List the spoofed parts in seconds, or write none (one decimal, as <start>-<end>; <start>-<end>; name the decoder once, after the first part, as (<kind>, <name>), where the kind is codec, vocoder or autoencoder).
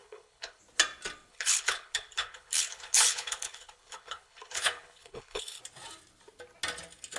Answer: 0.0-0.6 (codec, HILCodec); 1.3-5.6